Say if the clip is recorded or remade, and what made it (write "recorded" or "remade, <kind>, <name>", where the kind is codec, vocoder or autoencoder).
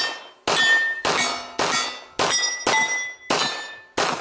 recorded